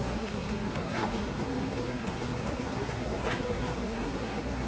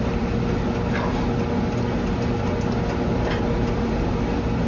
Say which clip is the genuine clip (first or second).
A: second